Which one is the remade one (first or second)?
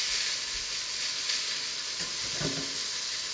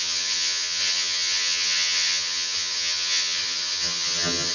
second